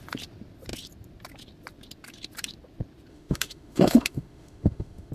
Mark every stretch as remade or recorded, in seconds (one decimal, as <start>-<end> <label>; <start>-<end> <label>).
0.0-3.1 recorded; 3.1-5.1 remade

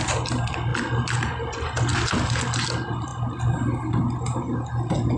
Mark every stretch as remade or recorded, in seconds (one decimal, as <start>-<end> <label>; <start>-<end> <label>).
0.0-5.2 recorded

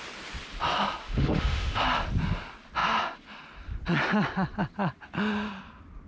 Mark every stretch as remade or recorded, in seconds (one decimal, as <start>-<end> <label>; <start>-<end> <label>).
0.0-1.0 recorded; 1.0-1.8 remade; 1.8-6.1 recorded

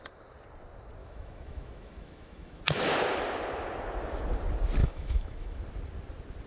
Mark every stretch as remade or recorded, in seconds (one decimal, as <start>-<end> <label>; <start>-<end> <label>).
0.0-1.0 recorded; 1.0-2.6 remade; 2.6-4.8 recorded; 4.8-5.6 remade; 5.6-6.5 recorded

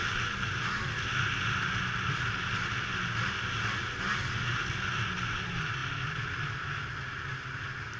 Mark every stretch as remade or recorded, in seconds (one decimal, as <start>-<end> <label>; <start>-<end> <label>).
0.0-8.0 recorded